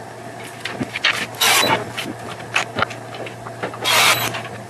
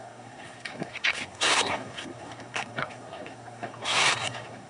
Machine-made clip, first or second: second